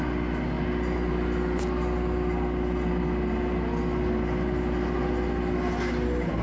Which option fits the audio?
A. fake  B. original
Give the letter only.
B